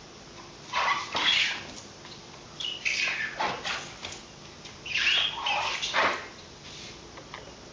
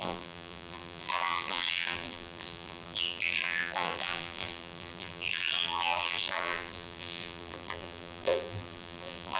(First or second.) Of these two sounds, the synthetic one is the second